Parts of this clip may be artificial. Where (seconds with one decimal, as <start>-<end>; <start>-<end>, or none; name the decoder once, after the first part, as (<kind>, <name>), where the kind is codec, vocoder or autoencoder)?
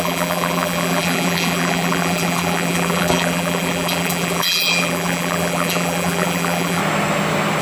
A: 0.0-6.8 (vocoder, BigVGAN v2)